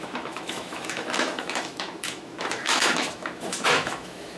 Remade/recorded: remade